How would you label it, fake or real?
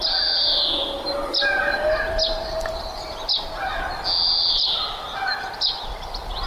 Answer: real